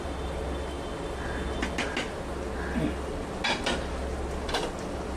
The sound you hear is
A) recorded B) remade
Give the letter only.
A